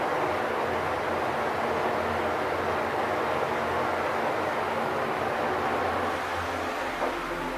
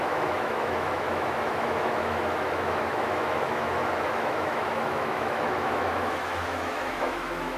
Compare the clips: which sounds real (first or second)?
first